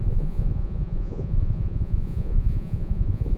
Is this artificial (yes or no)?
yes